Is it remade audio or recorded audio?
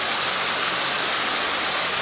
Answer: recorded